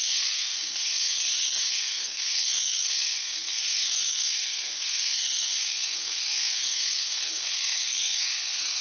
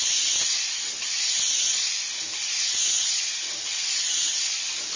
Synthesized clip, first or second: first